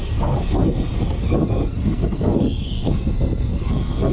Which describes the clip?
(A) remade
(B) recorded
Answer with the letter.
A